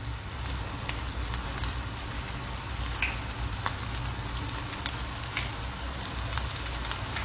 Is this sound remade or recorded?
recorded